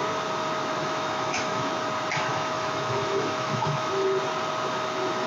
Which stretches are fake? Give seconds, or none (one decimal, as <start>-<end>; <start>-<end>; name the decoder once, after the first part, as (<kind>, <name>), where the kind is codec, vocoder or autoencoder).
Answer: 0.8-1.7 (autoencoder, DAC-VAE); 2.3-3.9

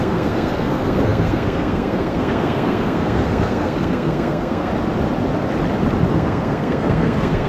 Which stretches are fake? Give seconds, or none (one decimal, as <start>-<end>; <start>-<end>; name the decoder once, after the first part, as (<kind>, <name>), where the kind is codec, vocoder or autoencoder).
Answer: 0.0-4.7 (codec, SNAC); 6.1-7.5